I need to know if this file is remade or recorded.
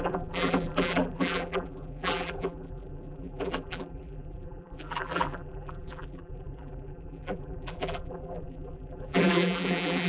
remade